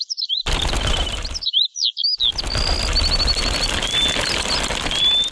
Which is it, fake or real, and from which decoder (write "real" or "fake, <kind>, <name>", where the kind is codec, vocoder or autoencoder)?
real